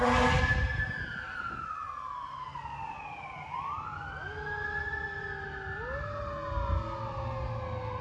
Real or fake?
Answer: real